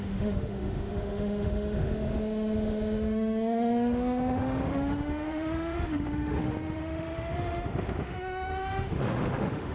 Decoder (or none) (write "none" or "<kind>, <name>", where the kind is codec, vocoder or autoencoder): autoencoder, DAC-VAE